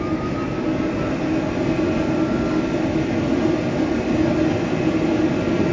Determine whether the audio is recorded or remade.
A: recorded